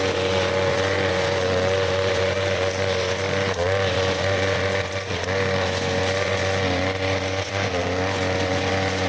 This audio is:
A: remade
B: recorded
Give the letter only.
A